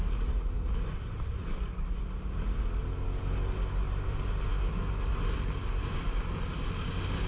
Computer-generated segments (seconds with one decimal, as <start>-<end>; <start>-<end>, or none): none